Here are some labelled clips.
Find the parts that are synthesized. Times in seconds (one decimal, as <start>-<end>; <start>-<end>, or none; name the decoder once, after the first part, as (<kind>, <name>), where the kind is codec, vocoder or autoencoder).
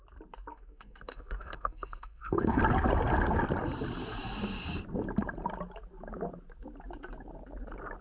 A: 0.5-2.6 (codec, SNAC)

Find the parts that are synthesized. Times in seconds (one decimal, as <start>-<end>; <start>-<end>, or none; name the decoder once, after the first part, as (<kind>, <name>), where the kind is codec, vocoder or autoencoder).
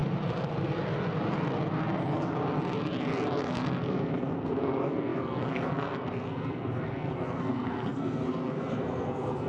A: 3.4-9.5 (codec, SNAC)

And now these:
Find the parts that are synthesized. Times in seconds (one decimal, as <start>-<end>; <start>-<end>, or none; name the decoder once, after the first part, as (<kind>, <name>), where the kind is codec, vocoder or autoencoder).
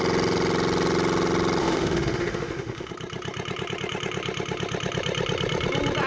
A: 1.6-2.9 (autoencoder, DAC-VAE)